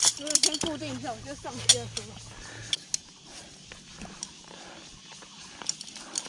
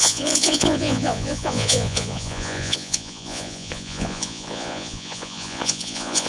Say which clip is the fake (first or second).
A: second